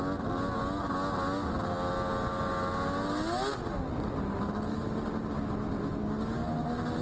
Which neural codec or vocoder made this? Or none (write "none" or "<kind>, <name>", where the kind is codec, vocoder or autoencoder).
none